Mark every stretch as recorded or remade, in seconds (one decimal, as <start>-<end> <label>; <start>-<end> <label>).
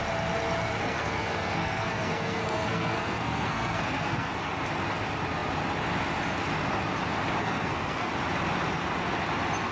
0.0-0.8 recorded; 0.8-4.5 remade; 4.5-7.4 recorded; 7.4-8.1 remade; 8.1-9.7 recorded